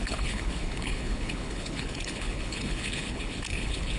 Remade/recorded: remade